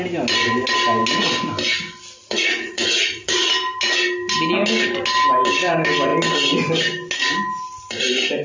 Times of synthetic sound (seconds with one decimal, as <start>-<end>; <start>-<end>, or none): 2.2-3.5